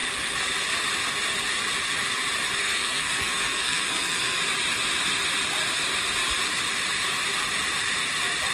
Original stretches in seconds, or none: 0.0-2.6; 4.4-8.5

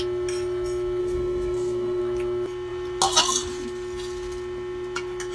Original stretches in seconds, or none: 0.0-1.0; 2.0-5.3

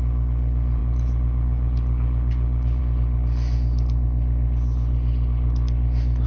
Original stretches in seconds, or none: 0.0-6.3

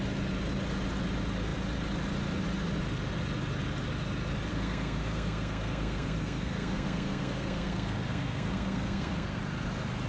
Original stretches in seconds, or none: 0.0-4.5; 9.4-10.1